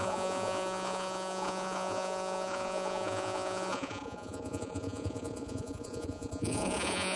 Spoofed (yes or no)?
yes